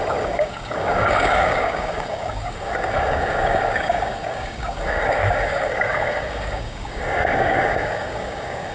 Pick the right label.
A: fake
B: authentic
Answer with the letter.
A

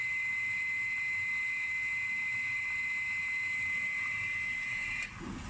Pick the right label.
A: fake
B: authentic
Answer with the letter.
B